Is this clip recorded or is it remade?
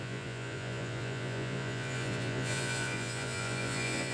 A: remade